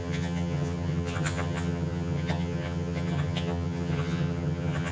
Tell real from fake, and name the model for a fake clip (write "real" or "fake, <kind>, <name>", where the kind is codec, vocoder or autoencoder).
fake, vocoder, HiFi-GAN